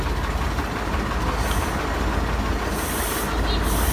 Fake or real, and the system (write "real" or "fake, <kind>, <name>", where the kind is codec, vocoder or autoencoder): real